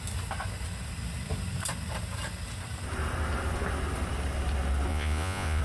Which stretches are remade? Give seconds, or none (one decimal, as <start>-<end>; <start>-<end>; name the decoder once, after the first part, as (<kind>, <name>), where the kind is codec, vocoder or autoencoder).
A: 4.9-5.6 (vocoder, Vocos)